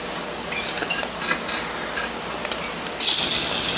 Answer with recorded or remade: recorded